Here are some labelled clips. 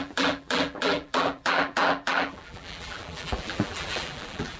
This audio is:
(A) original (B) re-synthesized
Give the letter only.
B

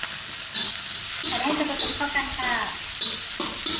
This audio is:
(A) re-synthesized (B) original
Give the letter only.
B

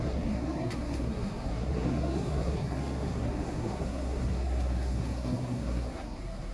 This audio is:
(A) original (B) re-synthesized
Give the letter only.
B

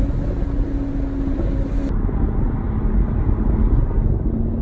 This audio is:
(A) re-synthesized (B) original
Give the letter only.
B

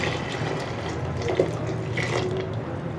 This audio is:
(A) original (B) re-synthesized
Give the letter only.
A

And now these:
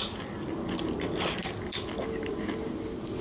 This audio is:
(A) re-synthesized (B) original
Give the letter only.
B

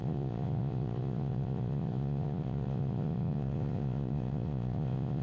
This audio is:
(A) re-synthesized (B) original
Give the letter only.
A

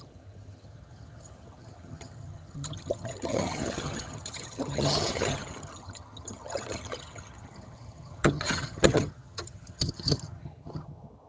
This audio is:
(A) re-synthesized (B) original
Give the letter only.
A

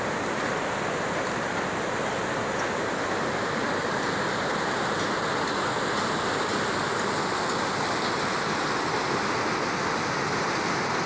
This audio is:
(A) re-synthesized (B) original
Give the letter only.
B